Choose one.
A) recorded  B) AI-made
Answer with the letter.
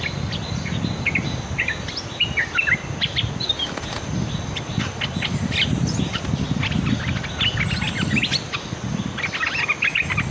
A